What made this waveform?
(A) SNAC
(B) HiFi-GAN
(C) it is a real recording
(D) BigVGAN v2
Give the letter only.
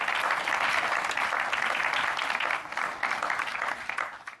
D